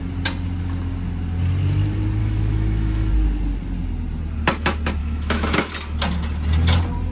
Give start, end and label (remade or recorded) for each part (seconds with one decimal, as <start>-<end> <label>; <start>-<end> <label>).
0.0-2.2 recorded; 2.2-3.1 remade; 3.1-5.0 recorded; 5.0-5.7 remade; 5.7-7.1 recorded